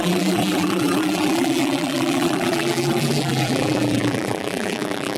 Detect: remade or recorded remade